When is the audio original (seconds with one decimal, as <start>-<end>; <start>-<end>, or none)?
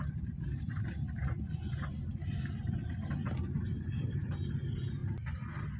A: 1.2-2.1; 5.0-5.8